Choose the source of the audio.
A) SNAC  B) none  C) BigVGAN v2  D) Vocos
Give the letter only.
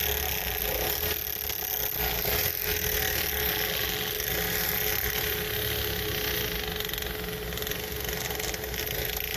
B